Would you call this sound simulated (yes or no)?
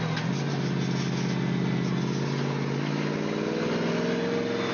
no